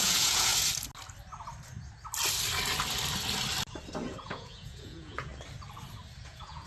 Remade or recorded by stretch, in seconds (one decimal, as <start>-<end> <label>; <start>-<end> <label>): 0.0-0.5 remade; 0.5-4.0 recorded; 4.0-5.3 remade; 5.3-6.2 recorded; 6.2-6.7 remade